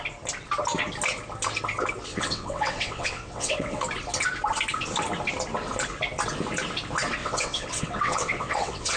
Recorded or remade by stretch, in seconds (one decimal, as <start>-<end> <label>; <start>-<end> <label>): 0.0-2.1 recorded; 2.1-3.8 remade; 3.8-7.2 recorded; 7.2-9.0 remade